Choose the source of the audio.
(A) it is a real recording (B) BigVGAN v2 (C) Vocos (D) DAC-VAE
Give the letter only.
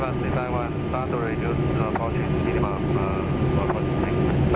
A